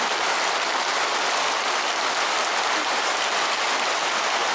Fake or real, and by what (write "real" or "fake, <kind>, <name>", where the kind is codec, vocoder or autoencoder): real